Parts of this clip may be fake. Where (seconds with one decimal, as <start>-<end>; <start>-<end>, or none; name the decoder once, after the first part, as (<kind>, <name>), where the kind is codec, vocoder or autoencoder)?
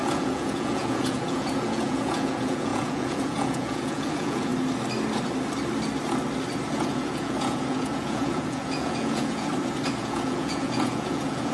0.0-4.5 (vocoder, Vocos); 6.7-9.5; 10.0-11.5